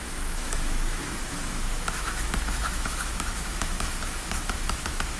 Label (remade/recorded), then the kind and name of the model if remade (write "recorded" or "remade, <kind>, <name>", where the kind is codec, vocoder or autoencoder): remade, autoencoder, DAC-VAE